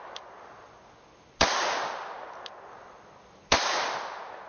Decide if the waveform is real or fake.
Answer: real